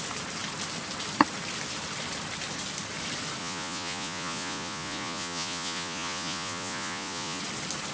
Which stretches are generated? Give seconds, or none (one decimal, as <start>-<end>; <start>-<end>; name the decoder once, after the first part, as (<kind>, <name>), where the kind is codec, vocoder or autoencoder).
3.4-7.4 (vocoder, Vocos)